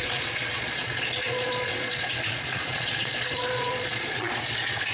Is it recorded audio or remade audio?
remade